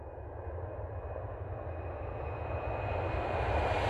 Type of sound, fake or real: real